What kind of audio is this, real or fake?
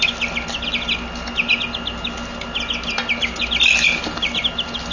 real